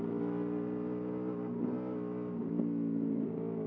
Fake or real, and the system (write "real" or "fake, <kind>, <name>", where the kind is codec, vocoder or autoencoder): real